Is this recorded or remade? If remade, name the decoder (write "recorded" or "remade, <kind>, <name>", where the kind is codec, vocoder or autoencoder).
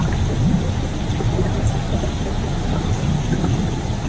recorded